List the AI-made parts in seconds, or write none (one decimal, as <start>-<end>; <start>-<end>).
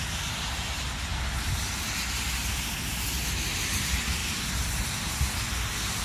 none